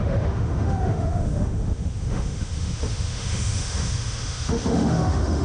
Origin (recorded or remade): remade